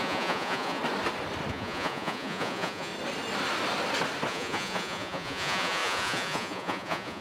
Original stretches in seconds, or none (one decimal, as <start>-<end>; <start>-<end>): 0.8-1.5; 2.9-4.3

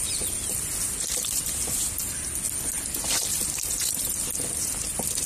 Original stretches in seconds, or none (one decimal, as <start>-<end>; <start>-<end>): 0.0-5.3

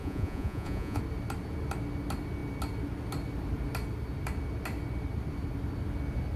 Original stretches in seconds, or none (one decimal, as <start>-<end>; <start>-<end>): 1.0-6.4

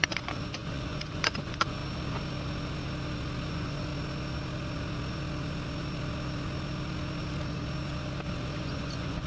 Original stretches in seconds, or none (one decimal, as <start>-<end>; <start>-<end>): 1.8-3.5; 3.9-8.6

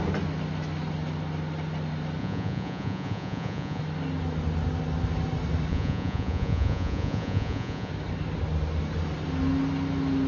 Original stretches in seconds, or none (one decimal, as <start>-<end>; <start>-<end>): 0.0-2.2; 3.8-5.7; 7.9-10.3

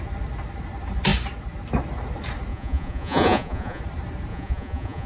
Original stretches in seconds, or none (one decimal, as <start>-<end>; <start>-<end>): 0.0-2.5; 3.8-4.3

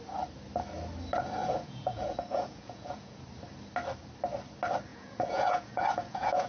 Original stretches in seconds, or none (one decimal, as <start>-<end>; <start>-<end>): 0.0-1.4; 3.2-4.9

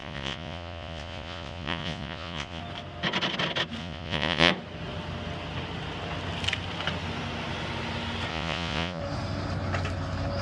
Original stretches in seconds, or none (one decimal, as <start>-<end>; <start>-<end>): 2.6-3.8; 4.5-8.3; 9.0-10.4